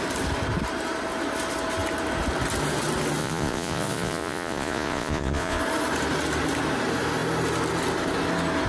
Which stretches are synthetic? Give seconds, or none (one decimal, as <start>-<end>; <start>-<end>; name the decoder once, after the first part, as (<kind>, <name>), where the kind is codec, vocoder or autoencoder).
3.2-5.6 (vocoder, Vocos)